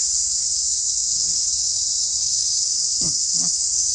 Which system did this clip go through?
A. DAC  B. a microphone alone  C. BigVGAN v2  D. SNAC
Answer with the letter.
D